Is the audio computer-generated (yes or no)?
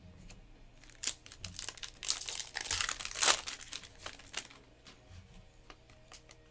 no